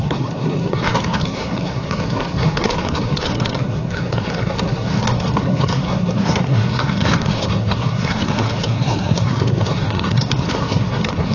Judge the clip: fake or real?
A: fake